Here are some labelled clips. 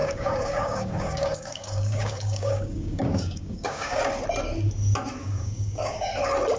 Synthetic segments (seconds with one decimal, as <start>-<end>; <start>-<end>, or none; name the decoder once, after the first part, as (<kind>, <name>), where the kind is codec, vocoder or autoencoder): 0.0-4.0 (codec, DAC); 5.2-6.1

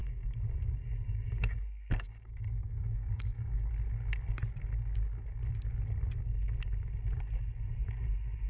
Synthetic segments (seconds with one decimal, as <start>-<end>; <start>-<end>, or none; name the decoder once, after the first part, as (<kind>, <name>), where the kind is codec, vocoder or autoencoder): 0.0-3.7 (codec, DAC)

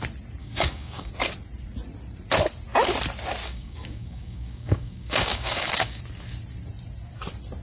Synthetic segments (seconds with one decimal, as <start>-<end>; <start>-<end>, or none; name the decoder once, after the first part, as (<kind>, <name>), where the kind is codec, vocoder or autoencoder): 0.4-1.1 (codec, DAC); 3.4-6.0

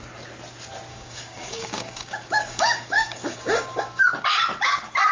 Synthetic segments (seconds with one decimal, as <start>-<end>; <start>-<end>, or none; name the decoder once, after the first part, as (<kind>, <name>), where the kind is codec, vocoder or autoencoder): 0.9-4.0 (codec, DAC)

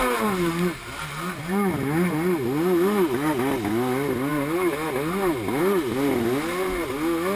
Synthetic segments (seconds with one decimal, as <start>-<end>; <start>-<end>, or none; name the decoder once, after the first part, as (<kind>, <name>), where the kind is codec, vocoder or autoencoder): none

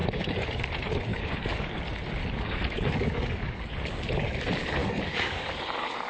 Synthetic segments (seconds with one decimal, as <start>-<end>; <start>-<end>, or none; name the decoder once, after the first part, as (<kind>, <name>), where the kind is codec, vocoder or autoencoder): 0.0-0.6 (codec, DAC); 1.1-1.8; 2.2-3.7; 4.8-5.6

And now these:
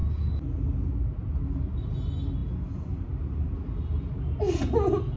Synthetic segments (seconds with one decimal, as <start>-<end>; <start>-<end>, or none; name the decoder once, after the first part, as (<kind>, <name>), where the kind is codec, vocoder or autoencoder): none